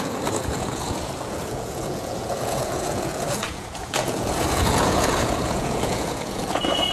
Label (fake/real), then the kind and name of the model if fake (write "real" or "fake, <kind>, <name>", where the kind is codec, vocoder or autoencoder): fake, vocoder, Vocos